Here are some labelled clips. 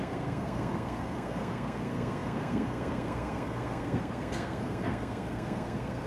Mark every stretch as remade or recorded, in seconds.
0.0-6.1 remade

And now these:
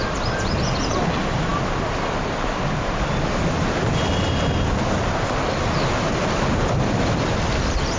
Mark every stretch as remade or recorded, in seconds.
0.0-8.0 recorded